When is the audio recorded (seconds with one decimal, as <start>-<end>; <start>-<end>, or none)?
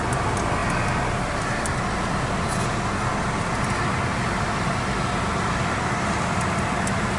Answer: 0.0-7.2